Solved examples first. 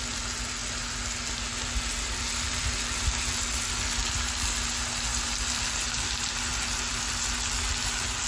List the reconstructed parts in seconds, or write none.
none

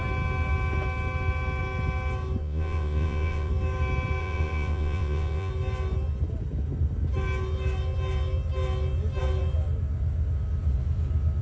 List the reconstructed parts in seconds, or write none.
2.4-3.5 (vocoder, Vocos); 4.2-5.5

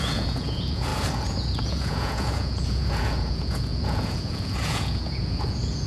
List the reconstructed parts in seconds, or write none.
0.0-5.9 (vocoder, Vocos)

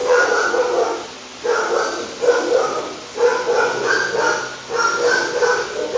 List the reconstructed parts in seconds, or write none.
0.0-0.6 (vocoder, Vocos); 3.3-3.9

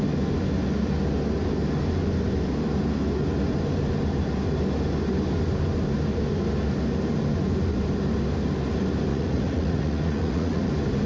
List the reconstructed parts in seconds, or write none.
9.1-10.7 (vocoder, Vocos)

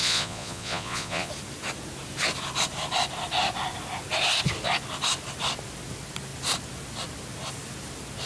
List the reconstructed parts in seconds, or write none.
0.0-1.3 (vocoder, Vocos)

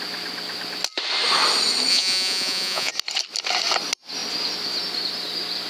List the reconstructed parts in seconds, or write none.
1.9-2.9 (vocoder, Vocos)